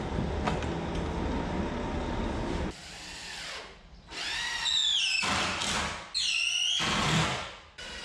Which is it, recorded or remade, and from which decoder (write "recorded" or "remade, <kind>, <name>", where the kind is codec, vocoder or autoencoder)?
recorded